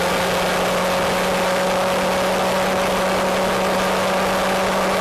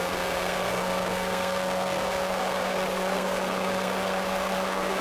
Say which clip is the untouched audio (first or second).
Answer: first